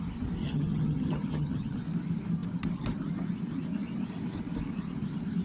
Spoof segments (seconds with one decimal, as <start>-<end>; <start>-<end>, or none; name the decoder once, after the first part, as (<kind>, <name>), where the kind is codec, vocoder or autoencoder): 0.4-1.8 (vocoder, HiFi-GAN)